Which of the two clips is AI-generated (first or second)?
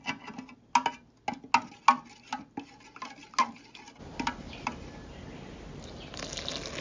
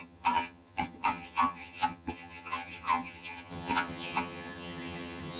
second